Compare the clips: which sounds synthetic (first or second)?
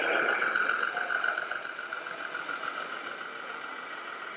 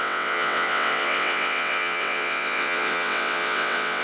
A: second